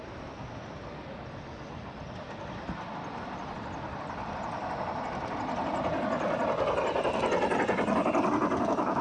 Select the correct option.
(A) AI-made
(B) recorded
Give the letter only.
B